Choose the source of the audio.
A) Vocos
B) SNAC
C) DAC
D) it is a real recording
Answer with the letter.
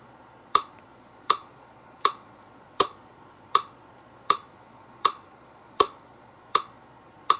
A